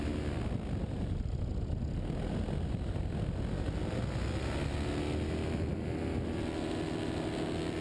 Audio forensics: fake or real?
real